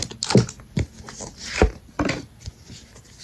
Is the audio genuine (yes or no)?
yes